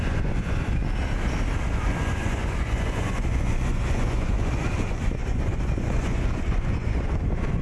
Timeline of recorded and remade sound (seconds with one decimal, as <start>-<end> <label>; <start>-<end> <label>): 0.0-0.8 remade; 0.8-1.7 recorded; 1.7-7.6 remade